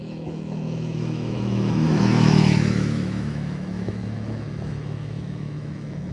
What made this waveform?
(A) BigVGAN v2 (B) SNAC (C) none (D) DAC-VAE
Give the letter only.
D